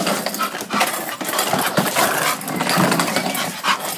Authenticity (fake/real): real